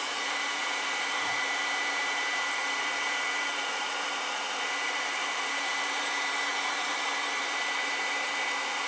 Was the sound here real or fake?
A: fake